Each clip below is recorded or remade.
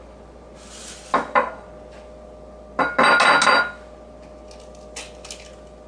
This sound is recorded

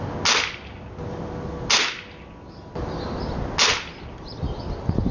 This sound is recorded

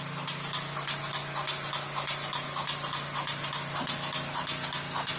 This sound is recorded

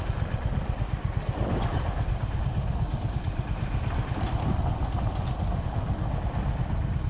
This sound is recorded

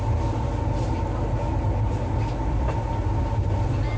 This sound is recorded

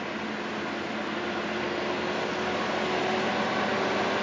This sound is recorded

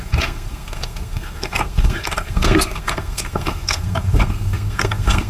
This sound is remade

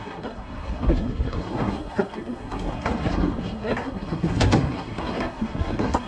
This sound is remade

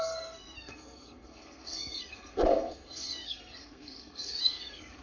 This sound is remade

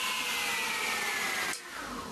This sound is recorded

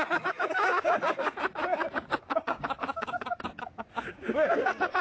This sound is remade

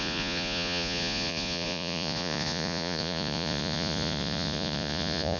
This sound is remade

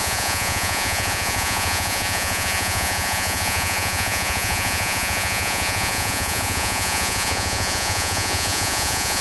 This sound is remade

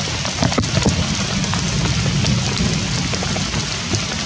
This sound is recorded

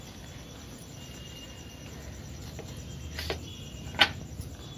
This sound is recorded